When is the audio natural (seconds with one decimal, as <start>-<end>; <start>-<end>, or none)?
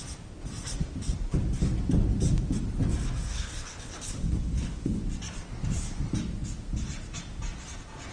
0.0-3.3; 5.0-8.1